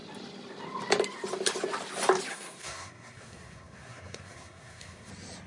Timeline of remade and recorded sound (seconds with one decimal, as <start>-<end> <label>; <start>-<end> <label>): 0.0-2.3 recorded; 2.3-5.1 remade; 5.1-5.5 recorded